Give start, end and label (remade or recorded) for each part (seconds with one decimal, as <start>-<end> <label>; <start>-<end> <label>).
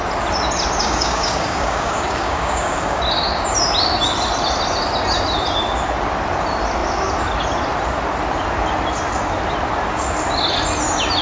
0.0-0.8 recorded; 0.8-3.0 remade; 3.0-11.2 recorded